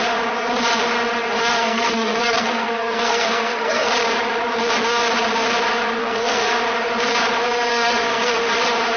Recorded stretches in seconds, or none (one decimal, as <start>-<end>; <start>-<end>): 0.0-1.4; 3.9-6.0; 6.6-7.7; 8.3-9.0